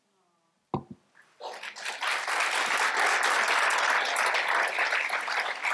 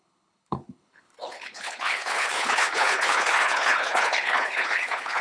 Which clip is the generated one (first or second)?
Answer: second